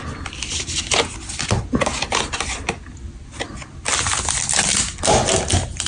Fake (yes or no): no